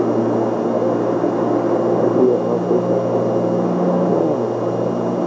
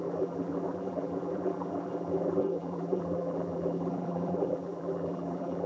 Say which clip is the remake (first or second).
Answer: second